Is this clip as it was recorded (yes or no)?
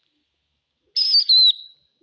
yes